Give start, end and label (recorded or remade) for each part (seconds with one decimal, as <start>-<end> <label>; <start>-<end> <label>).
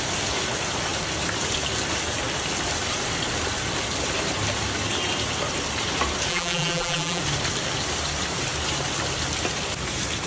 0.0-6.3 recorded; 6.3-7.2 remade; 7.2-10.3 recorded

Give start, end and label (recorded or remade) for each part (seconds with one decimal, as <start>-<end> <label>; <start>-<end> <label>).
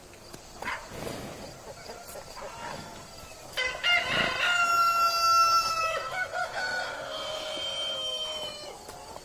0.0-9.2 recorded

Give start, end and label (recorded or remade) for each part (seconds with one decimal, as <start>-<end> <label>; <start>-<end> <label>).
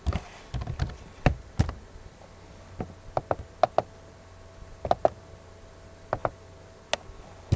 0.0-7.6 recorded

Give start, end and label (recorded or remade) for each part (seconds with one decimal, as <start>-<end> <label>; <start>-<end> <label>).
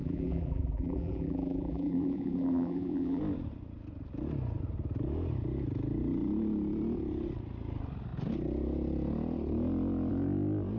0.0-3.2 remade; 3.2-10.8 recorded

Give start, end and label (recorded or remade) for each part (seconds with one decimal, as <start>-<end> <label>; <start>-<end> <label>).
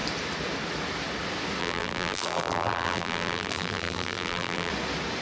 0.0-1.6 recorded; 1.6-4.7 remade; 4.7-5.2 recorded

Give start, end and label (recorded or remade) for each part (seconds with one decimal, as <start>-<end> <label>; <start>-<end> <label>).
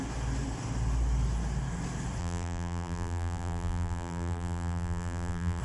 0.0-2.2 recorded; 2.2-5.6 remade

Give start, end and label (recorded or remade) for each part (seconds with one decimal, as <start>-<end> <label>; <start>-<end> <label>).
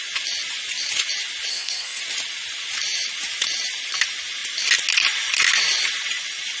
0.0-1.5 recorded; 1.5-2.0 remade; 2.0-6.6 recorded